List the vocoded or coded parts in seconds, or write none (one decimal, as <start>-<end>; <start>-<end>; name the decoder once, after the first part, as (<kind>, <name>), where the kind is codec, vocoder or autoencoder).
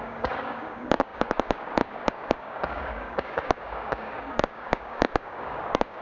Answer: 0.0-6.0 (codec, DAC)